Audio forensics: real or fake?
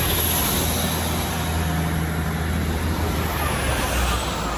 real